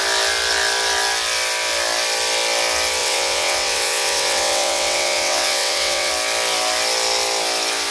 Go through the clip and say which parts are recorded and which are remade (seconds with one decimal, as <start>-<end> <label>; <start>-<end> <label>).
0.0-3.0 recorded; 3.0-6.1 remade; 6.1-7.9 recorded